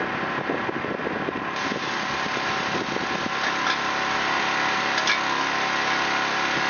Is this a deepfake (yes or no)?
no